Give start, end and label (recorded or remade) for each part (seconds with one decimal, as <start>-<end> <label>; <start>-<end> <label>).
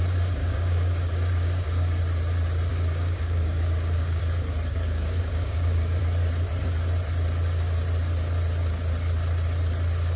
0.0-0.4 recorded; 0.4-2.0 remade; 2.0-2.7 recorded; 2.7-4.2 remade; 4.2-4.7 recorded; 4.7-6.0 remade; 6.0-10.2 recorded